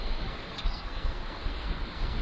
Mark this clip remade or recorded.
remade